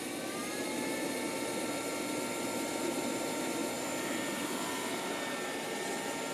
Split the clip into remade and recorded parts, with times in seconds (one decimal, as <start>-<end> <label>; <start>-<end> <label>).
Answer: 0.0-6.3 recorded